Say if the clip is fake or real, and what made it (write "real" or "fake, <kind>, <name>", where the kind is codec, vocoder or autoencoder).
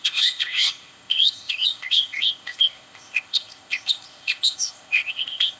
fake, codec, ZipCodec